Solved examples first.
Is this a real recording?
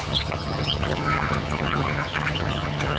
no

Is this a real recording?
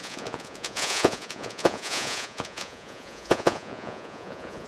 no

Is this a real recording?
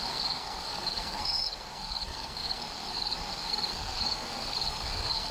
no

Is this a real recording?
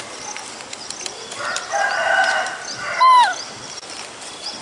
yes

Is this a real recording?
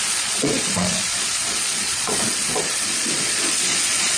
no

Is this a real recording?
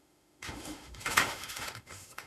no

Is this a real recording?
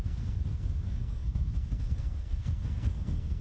no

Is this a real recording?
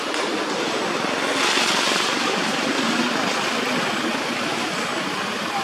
yes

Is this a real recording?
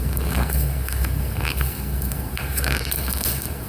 no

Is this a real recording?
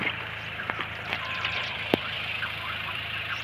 no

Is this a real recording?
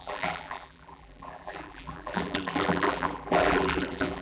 no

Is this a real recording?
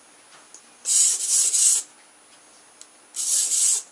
yes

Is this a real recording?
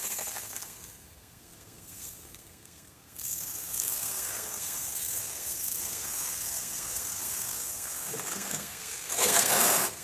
no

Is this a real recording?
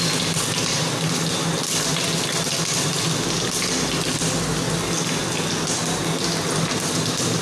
yes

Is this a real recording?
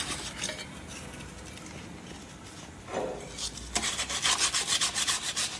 yes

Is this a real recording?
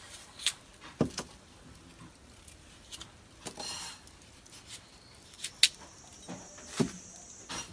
yes